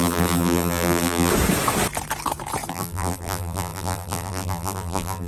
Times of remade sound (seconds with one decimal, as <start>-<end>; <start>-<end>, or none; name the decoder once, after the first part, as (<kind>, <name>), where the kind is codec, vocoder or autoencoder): 0.0-1.3 (vocoder, BigVGAN v2); 2.7-5.3